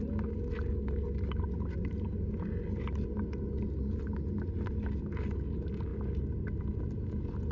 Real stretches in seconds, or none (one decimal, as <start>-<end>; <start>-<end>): 0.0-7.5